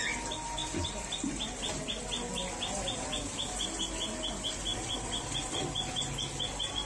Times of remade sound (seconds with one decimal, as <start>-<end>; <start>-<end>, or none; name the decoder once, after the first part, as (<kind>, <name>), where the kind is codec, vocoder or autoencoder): 0.6-1.6 (vocoder, BigVGAN v2); 4.7-5.4